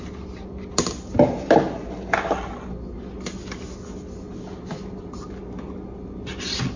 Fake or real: real